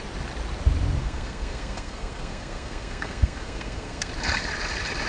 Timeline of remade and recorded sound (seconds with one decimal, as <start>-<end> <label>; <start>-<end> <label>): 0.0-1.0 recorded; 1.0-4.1 remade; 4.1-5.1 recorded